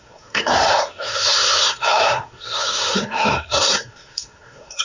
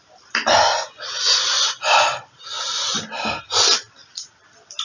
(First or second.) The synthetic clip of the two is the first